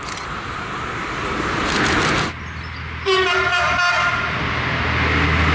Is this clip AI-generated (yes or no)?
no